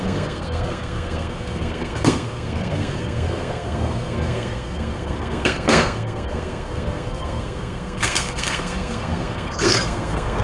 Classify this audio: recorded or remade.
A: remade